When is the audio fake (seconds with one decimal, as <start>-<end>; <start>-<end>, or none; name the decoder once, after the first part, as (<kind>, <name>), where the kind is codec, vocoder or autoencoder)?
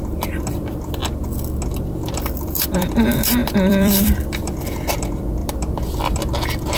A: 0.0-1.0 (vocoder, BigVGAN v2); 1.8-6.8